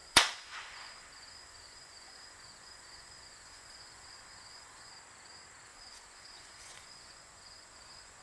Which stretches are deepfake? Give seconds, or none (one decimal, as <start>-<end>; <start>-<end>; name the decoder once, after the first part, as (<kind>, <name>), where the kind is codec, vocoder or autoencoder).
0.0-4.9 (vocoder, Vocos); 5.7-8.2